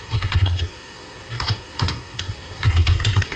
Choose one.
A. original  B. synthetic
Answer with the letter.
B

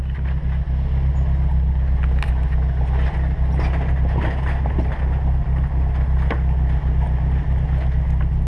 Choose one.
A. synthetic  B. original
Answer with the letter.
B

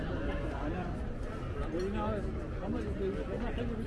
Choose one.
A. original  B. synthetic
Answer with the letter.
A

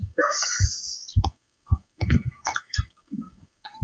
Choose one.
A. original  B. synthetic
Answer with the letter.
B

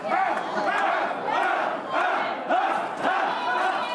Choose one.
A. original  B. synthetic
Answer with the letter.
A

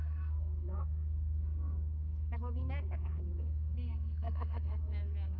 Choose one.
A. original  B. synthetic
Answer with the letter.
B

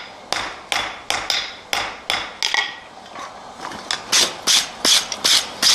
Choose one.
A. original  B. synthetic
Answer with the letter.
A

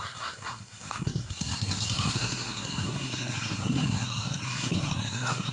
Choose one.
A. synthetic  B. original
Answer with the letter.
A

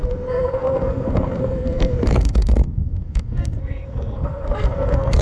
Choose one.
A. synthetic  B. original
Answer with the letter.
A